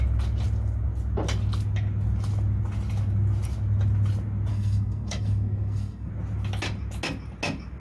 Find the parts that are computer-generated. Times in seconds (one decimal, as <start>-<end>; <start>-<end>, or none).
4.5-6.1